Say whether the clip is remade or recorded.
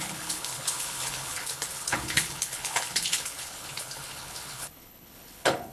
remade